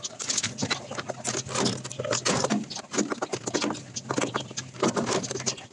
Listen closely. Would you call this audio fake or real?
real